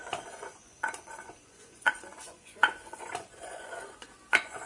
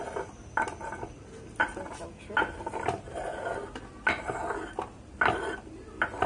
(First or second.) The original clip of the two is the second